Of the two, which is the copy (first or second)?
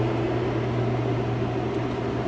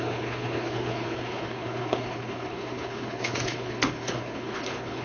second